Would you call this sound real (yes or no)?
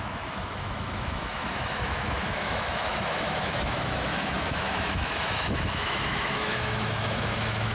no